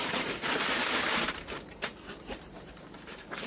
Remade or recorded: remade